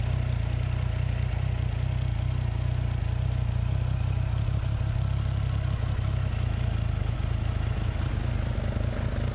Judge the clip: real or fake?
real